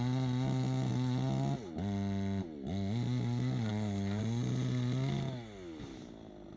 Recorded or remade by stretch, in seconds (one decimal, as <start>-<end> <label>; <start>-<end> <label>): 0.0-6.6 recorded